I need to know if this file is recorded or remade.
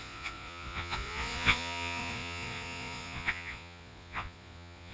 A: remade